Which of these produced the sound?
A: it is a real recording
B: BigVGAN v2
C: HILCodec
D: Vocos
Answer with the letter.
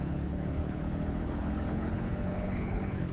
C